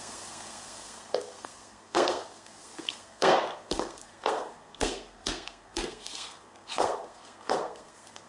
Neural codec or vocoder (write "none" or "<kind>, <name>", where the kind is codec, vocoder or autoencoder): codec, SNAC